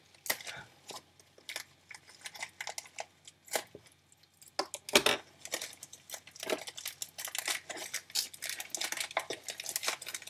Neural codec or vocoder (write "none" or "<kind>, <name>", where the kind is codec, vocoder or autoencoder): none